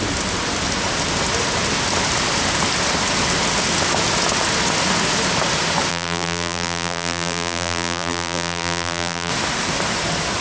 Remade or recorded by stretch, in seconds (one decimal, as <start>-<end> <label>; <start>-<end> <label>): 0.0-5.9 recorded; 5.9-9.3 remade; 9.3-10.4 recorded